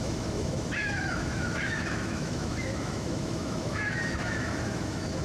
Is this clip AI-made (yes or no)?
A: yes